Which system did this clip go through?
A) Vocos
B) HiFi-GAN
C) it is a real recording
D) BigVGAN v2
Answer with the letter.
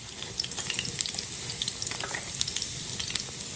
C